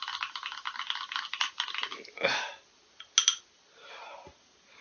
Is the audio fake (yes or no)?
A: no